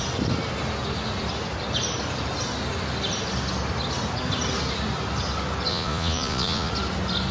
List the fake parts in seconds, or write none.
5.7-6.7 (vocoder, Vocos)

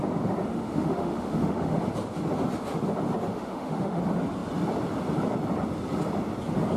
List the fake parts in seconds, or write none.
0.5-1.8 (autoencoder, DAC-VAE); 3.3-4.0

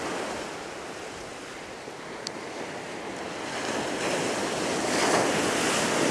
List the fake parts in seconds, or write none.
none

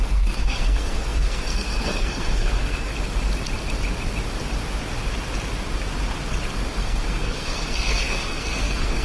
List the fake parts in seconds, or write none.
0.0-2.9 (codec, SNAC); 6.8-9.0

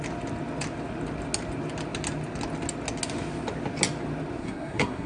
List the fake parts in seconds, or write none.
4.4-5.1 (codec, SNAC)

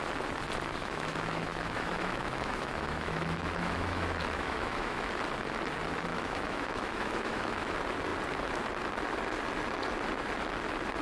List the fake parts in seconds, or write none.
0.8-5.1 (autoencoder, DAC-VAE); 6.1-7.7

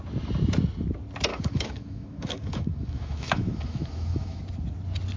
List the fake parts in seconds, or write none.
1.3-4.4 (autoencoder, DAC-VAE)